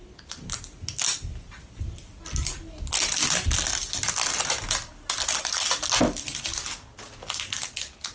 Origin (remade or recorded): recorded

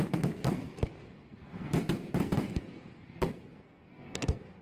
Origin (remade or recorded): remade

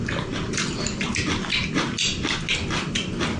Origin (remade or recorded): recorded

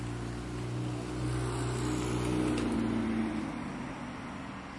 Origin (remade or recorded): recorded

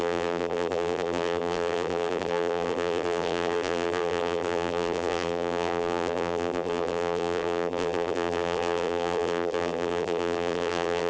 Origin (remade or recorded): remade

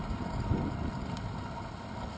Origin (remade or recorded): recorded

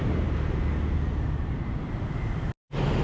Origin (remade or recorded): recorded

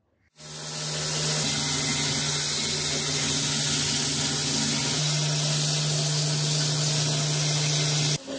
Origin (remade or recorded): recorded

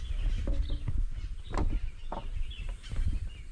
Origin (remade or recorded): recorded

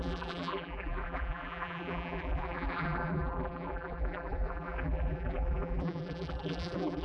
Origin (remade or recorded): remade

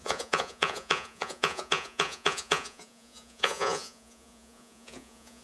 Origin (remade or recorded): remade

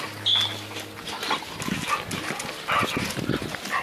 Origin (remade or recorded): recorded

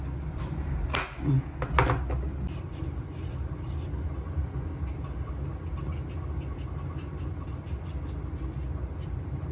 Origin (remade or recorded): recorded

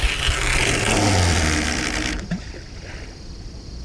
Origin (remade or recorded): recorded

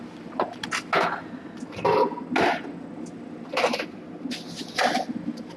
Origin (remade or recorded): recorded